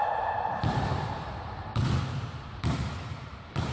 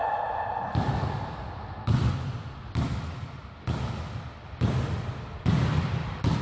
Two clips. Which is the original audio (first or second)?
second